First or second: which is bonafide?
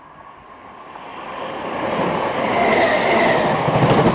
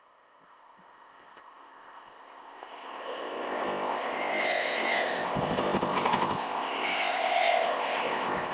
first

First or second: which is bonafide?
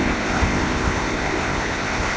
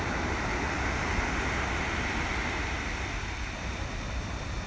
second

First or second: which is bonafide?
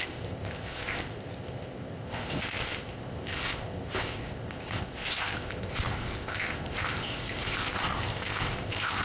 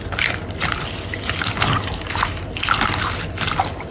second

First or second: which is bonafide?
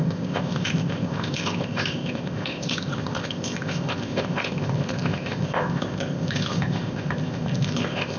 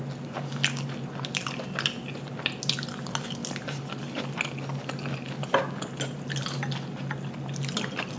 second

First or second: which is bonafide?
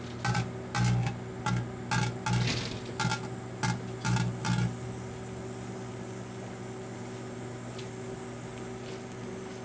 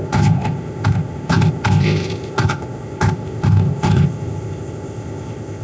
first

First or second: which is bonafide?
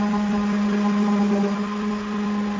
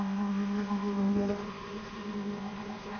first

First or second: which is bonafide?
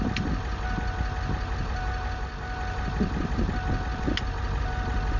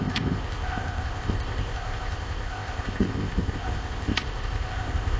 first